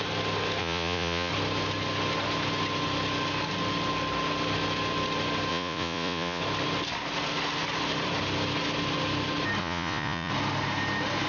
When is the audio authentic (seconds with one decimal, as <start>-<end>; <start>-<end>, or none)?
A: 0.0-0.6; 1.3-5.5; 6.4-9.6; 10.3-11.3